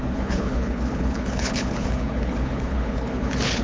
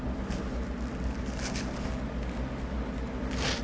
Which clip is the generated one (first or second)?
first